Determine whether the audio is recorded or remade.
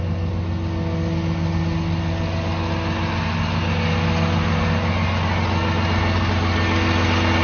recorded